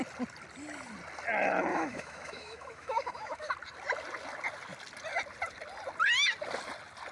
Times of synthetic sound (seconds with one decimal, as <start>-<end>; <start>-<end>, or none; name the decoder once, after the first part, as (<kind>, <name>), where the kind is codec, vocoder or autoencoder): 1.7-3.5 (autoencoder, DAC-VAE)